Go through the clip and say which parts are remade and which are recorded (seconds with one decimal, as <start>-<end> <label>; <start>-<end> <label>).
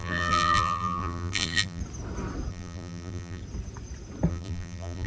0.0-1.8 remade; 1.8-2.5 recorded; 2.5-3.4 remade; 3.4-4.3 recorded; 4.3-5.1 remade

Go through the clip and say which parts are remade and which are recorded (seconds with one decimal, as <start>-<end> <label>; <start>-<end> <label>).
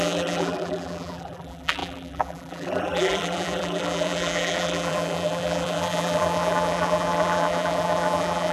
0.0-8.5 remade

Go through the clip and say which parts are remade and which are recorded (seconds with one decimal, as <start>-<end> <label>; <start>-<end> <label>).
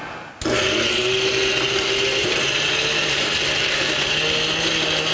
0.0-2.2 recorded; 2.2-3.4 remade; 3.4-5.1 recorded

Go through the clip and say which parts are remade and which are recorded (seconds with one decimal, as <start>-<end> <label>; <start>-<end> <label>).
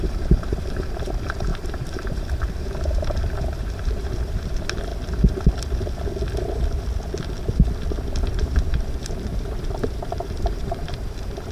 0.0-4.9 remade; 4.9-8.2 recorded; 8.2-11.5 remade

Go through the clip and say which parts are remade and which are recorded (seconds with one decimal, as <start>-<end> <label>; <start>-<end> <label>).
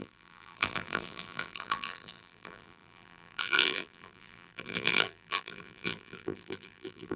0.0-7.2 remade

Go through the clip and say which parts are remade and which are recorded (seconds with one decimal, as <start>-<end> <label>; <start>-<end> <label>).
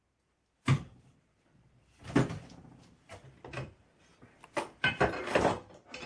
0.0-2.0 recorded; 2.0-5.3 remade; 5.3-6.1 recorded